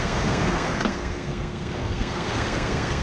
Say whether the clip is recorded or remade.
remade